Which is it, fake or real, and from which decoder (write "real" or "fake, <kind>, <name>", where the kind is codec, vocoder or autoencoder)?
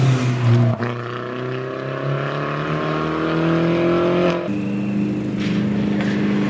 real